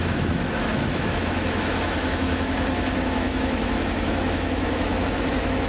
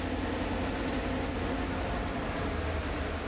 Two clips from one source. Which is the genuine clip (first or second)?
second